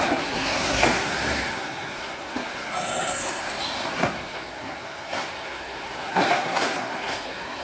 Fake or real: fake